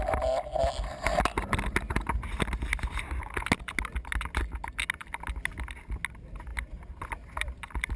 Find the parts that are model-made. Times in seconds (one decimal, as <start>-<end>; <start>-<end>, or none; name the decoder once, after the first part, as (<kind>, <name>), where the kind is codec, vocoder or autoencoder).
none